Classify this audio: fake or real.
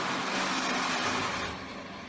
real